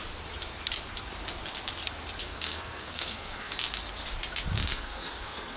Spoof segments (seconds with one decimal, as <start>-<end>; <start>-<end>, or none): 2.2-3.5; 4.7-5.6